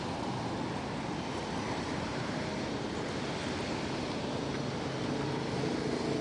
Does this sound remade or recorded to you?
remade